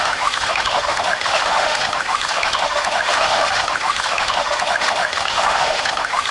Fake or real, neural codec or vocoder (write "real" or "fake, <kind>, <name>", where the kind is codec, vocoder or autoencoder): fake, autoencoder, DAC-VAE